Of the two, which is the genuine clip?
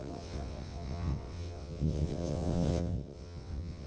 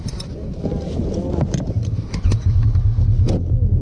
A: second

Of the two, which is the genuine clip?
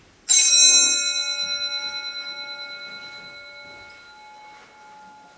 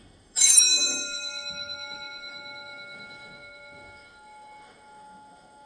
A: first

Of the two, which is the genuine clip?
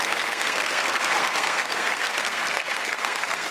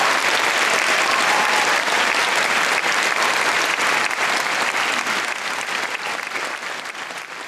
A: second